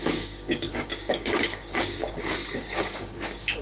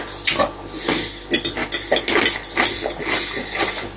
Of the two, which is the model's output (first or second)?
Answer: first